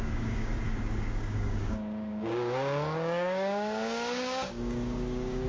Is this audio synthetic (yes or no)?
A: yes